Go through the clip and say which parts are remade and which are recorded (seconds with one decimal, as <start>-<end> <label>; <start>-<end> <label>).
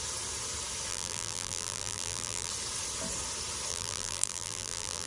0.0-0.9 recorded; 0.9-2.5 remade; 2.5-3.7 recorded; 3.7-5.1 remade